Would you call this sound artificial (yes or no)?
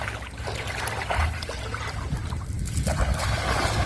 no